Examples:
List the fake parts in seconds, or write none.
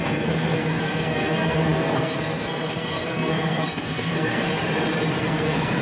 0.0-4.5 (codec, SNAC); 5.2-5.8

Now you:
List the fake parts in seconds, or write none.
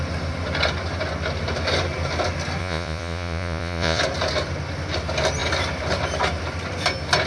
2.6-4.0 (vocoder, Vocos)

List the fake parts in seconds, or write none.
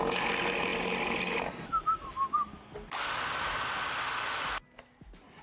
none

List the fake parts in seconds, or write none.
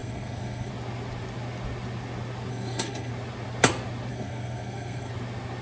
0.0-0.7 (codec, SNAC); 2.5-3.1; 4.1-5.1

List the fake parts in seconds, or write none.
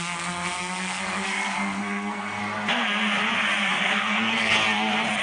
0.0-2.4 (codec, SNAC); 3.7-4.5